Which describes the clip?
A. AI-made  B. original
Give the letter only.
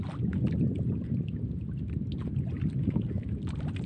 B